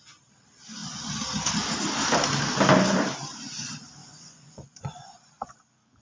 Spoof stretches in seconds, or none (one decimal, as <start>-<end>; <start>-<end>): 4.0-5.4

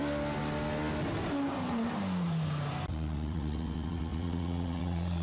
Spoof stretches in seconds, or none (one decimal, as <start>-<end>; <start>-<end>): 2.9-5.2

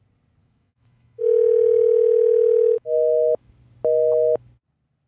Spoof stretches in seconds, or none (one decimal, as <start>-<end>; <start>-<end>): 0.4-3.5

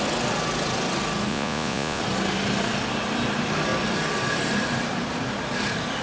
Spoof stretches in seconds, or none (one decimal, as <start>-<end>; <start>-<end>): 1.3-2.0

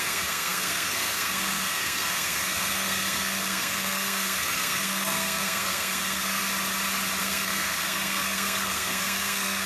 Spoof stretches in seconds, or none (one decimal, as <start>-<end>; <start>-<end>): 0.0-6.4; 7.2-9.7

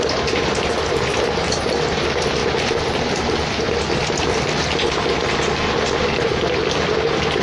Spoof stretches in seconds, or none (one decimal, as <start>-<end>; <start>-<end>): none